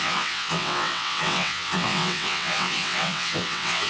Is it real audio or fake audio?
fake